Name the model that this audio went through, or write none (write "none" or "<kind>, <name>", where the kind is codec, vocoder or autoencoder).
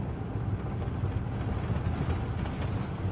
none